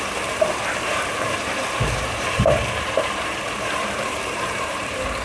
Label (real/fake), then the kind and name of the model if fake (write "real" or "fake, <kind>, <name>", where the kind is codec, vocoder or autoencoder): fake, vocoder, BigVGAN v2